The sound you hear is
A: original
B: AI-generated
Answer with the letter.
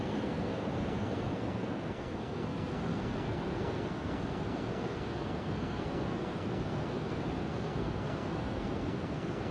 B